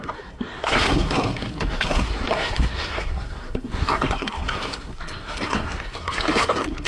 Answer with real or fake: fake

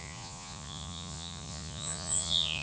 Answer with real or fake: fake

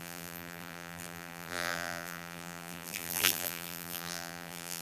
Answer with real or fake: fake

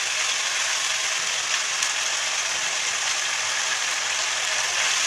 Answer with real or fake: real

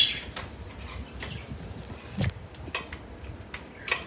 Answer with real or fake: fake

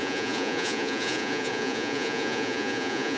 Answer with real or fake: fake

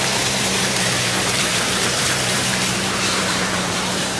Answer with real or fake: fake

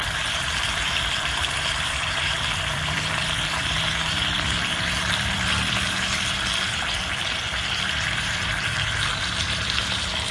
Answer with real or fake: fake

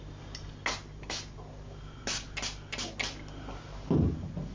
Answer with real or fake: real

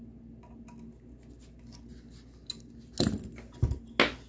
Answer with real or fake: real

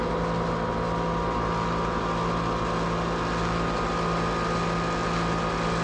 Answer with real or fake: real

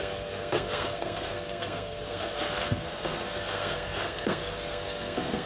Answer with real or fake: fake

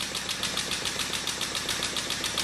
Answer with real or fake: fake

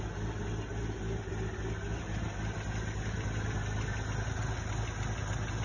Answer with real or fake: real